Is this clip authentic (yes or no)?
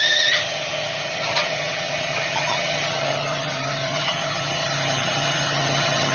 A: no